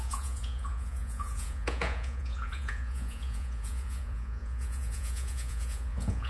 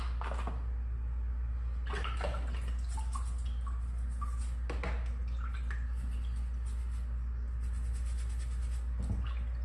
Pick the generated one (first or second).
first